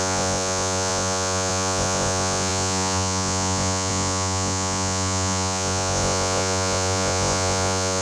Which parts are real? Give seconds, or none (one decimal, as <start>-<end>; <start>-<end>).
none